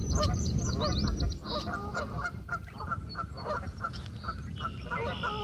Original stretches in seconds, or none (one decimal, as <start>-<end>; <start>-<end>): 0.6-1.4; 4.6-5.4